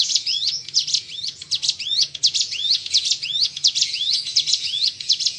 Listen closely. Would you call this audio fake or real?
fake